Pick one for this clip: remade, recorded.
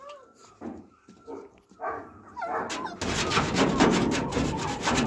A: recorded